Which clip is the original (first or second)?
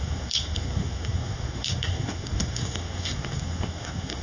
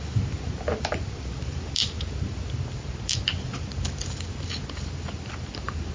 second